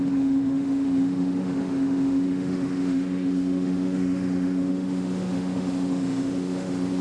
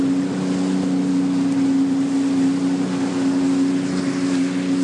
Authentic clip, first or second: second